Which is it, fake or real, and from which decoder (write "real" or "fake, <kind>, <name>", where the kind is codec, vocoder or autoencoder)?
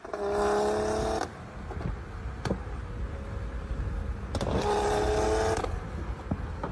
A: real